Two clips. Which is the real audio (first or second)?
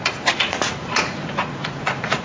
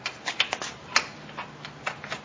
second